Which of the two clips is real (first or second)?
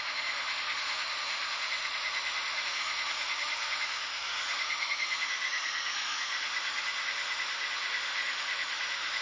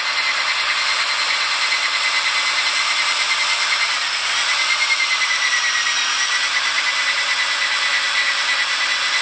second